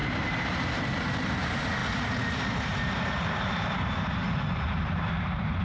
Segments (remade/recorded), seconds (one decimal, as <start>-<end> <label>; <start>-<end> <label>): 0.0-5.6 remade